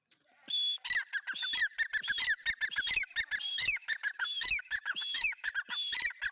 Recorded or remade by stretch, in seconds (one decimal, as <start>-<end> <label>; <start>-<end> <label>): 0.0-3.5 recorded; 3.5-5.5 remade; 5.5-6.3 recorded